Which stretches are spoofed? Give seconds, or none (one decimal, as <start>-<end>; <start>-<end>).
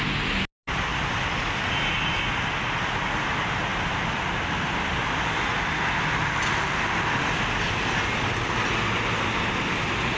0.9-1.6; 3.7-4.5